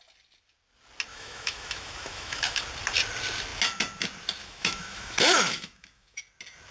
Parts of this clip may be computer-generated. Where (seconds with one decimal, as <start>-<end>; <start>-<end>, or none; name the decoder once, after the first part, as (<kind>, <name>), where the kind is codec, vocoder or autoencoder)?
1.1-2.6 (autoencoder, DAC-VAE); 4.4-6.2

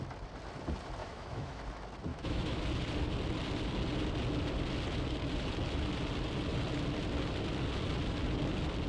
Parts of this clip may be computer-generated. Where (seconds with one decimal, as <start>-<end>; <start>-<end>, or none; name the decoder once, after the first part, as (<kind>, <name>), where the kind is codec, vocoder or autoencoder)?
1.0-1.6 (autoencoder, DAC-VAE); 2.1-2.6

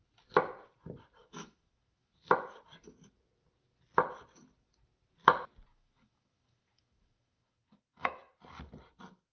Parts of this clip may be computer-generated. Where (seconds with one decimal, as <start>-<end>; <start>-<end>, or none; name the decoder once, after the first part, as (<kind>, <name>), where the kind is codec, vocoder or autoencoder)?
1.2-2.1 (autoencoder, DAC-VAE); 5.7-8.3

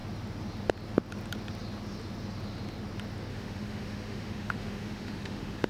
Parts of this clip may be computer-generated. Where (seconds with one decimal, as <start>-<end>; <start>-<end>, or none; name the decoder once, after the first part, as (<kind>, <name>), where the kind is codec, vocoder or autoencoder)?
3.3-5.7 (autoencoder, DAC-VAE)